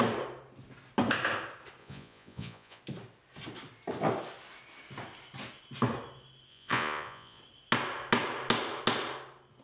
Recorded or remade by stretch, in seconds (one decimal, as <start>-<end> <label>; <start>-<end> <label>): 0.0-1.8 recorded; 1.8-2.8 remade; 2.8-6.5 recorded; 6.5-7.4 remade; 7.4-9.6 recorded